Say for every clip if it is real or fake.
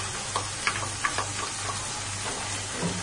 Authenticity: real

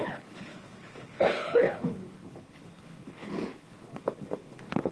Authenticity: fake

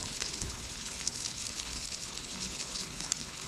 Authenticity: fake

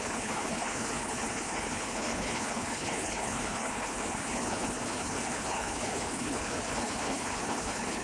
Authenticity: fake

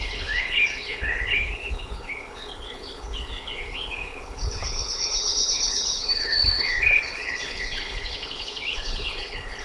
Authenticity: fake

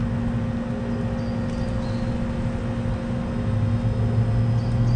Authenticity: real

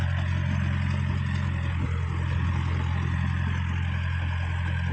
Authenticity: real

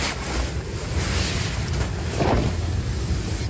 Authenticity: real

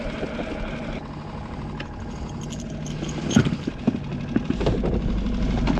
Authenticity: real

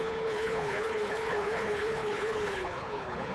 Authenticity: fake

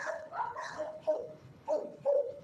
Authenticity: fake